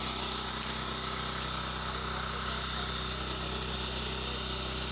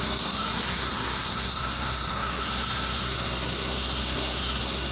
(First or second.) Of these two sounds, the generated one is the second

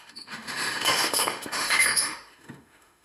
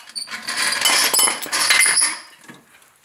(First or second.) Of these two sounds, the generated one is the first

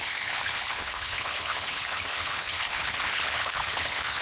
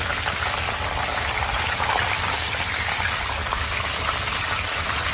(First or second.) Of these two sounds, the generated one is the first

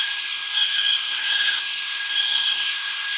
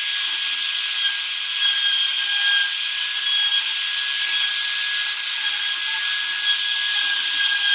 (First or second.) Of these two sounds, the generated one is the first